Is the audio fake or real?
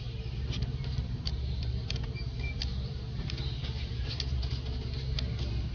fake